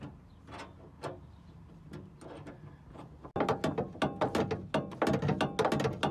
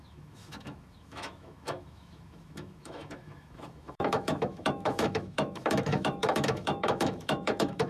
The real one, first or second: first